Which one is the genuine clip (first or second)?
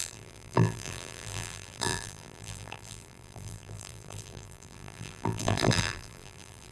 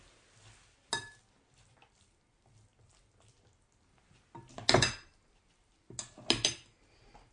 second